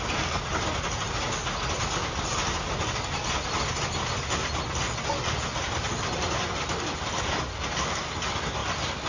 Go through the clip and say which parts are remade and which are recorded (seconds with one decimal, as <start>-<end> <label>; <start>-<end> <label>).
0.0-9.1 recorded